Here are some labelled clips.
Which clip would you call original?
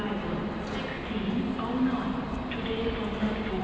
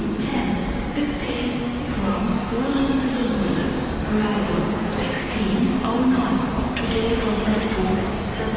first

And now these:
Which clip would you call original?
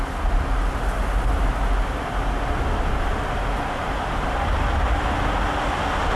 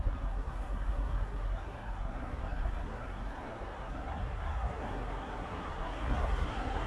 first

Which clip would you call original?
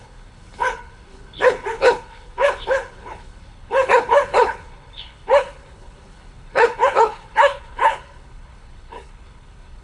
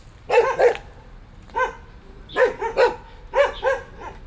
second